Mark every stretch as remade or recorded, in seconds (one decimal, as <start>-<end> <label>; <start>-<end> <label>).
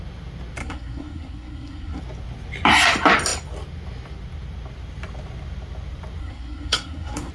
0.0-0.6 recorded; 0.6-2.0 remade; 2.0-6.2 recorded; 6.2-7.3 remade